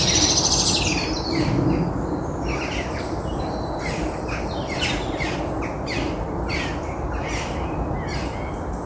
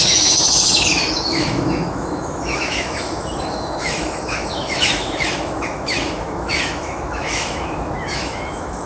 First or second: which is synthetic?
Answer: second